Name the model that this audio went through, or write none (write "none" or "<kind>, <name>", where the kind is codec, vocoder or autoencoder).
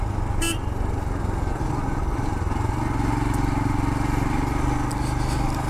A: none